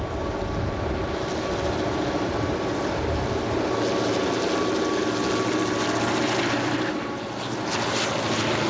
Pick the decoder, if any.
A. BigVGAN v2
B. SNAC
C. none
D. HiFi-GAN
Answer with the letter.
C